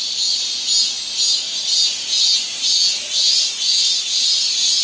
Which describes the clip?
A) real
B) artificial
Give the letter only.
A